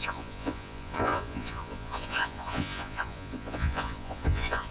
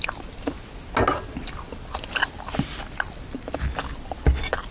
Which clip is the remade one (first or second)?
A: first